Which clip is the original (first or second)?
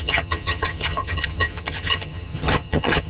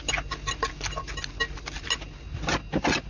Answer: second